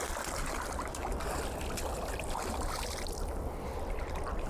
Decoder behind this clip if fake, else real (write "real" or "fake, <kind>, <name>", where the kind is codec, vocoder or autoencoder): real